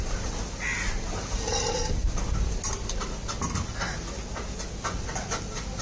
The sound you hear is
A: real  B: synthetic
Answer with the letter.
A